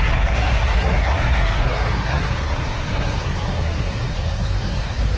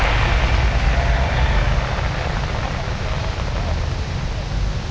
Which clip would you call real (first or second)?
second